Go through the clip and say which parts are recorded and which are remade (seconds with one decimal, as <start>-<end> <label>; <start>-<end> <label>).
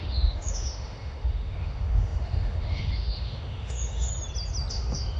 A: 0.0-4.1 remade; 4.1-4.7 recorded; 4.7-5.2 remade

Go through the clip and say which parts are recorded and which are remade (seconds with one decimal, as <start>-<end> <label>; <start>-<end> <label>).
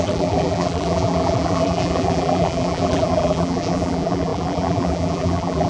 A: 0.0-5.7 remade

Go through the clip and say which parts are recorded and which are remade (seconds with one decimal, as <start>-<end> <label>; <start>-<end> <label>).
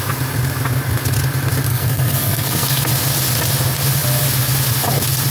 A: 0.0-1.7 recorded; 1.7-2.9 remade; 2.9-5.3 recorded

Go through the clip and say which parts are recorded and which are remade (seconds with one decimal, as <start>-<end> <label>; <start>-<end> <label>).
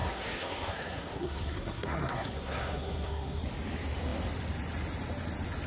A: 0.0-3.4 remade; 3.4-5.7 recorded